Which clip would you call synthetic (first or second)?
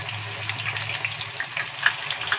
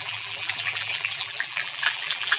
second